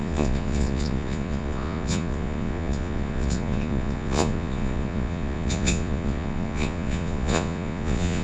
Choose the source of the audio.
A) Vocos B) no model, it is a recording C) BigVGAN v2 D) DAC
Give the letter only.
A